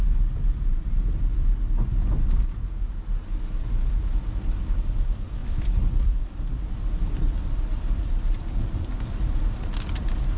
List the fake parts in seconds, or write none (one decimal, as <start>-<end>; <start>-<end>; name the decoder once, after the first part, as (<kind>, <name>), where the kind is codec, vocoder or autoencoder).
5.4-9.4 (vocoder, BigVGAN v2)